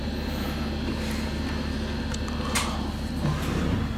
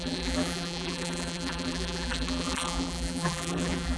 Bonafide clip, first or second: first